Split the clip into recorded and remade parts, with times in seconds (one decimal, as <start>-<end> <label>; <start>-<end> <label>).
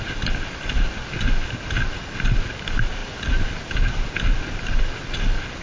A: 0.0-5.6 recorded